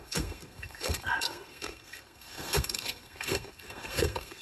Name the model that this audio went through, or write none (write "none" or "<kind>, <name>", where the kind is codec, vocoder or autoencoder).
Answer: codec, SNAC